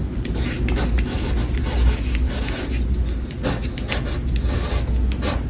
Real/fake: real